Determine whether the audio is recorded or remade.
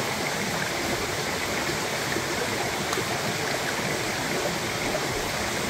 recorded